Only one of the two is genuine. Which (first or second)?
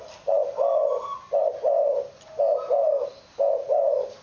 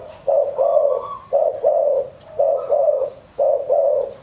first